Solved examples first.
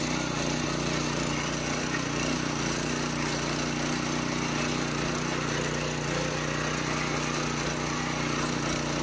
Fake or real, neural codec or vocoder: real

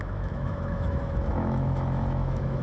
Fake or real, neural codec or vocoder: fake, autoencoder, DAC-VAE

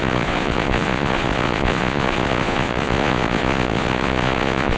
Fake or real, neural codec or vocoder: fake, vocoder, Vocos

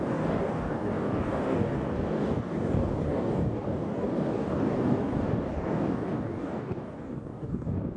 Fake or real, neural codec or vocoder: fake, codec, DAC